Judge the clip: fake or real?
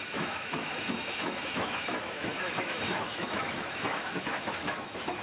fake